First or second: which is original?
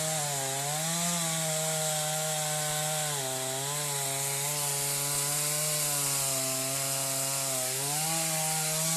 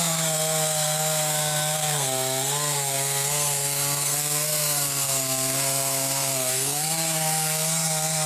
first